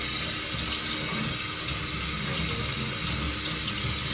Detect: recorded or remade recorded